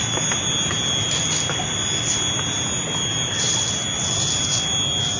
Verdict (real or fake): real